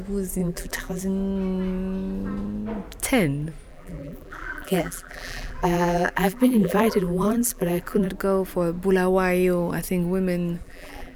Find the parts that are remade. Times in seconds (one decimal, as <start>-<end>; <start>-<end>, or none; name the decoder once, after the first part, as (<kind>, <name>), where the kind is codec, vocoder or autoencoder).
0.4-1.0 (vocoder, BigVGAN v2); 3.7-8.1; 10.6-11.2